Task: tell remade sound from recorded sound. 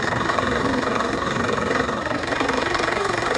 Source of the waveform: remade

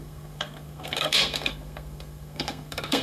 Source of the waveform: remade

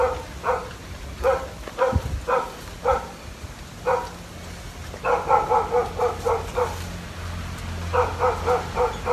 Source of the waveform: recorded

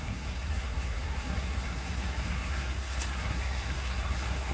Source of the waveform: remade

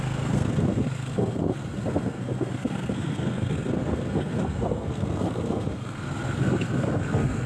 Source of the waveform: remade